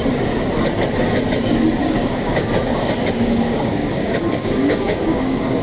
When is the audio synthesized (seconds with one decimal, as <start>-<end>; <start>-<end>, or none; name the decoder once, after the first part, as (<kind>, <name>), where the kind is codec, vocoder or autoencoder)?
1.8-5.6 (codec, DAC)